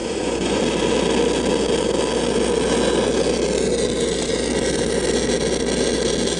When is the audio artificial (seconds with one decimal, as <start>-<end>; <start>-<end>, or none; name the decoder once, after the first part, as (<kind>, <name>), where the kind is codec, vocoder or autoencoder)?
0.0-0.6 (vocoder, Vocos)